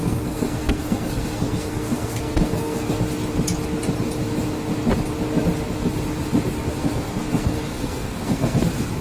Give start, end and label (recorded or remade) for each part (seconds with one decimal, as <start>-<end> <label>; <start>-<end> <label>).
0.0-2.9 remade; 2.9-6.7 recorded; 6.7-8.6 remade; 8.6-9.0 recorded